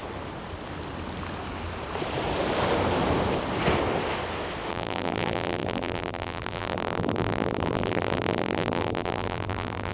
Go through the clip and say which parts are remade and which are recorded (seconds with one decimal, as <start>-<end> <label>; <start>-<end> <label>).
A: 0.0-4.7 recorded; 4.7-9.9 remade